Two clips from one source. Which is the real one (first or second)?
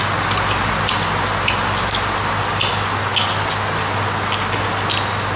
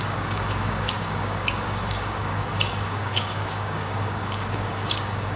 first